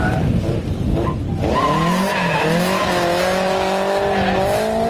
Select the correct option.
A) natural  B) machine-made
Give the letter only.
A